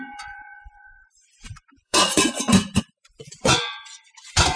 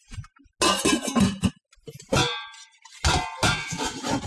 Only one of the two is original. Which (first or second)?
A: second